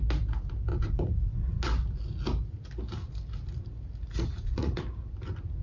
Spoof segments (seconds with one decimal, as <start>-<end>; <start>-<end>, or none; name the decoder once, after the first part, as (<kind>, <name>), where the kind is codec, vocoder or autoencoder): 0.7-1.6 (vocoder, Vocos); 4.1-4.8